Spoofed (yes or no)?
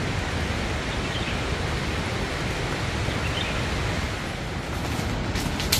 no